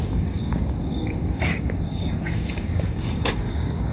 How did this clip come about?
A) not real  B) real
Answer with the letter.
A